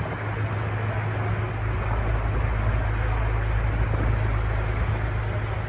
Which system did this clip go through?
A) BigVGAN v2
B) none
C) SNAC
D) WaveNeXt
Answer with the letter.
B